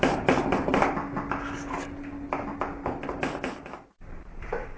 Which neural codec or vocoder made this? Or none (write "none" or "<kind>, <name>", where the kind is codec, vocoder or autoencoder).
none